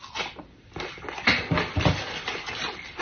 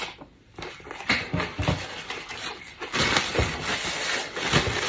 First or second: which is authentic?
second